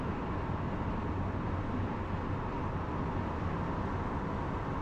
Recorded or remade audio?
recorded